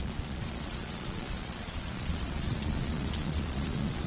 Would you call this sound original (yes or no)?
no